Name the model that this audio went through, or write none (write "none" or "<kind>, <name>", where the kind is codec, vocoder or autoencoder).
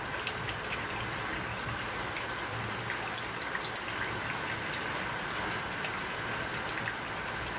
none